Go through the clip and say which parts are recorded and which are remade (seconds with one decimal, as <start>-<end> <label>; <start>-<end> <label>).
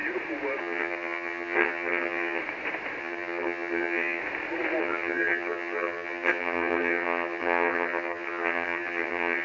0.0-0.6 recorded; 0.6-2.4 remade; 2.4-3.0 recorded; 3.0-4.2 remade; 4.2-4.8 recorded; 4.8-9.4 remade